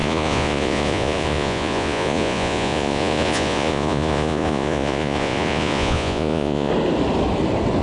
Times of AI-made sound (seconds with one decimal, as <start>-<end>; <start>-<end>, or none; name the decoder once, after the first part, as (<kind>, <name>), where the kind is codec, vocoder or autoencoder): 0.0-6.7 (vocoder, Vocos)

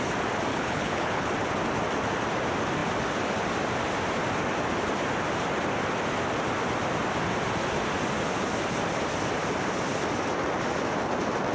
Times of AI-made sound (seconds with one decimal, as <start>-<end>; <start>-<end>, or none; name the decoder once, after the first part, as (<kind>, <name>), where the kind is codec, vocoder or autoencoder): 0.5-1.3 (codec, HILCodec)

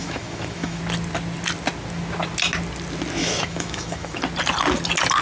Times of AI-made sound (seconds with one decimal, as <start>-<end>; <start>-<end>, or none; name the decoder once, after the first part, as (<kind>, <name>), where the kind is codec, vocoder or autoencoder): 0.0-0.8 (autoencoder, DAC-VAE); 3.2-4.2

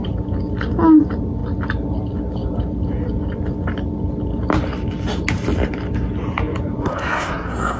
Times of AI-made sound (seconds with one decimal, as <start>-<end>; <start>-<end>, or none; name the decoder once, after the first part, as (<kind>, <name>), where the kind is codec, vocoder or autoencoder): 6.8-7.8 (codec, SNAC)